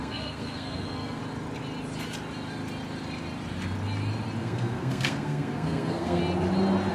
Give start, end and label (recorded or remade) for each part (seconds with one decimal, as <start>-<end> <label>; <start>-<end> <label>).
0.0-1.2 remade; 1.2-4.4 recorded; 4.4-6.2 remade; 6.2-6.9 recorded